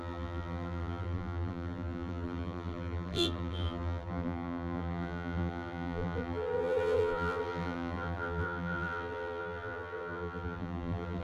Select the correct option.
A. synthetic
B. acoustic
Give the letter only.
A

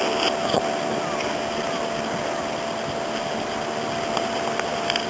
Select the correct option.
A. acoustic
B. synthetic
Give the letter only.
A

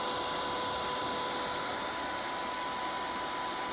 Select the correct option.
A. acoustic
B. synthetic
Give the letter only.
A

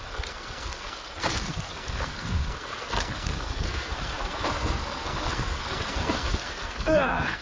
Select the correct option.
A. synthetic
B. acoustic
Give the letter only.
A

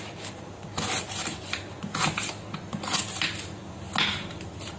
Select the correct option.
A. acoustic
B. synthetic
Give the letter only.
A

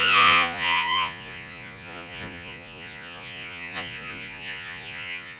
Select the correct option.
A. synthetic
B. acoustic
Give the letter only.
A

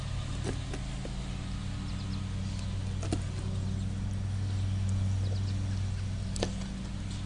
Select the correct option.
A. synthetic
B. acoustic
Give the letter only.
B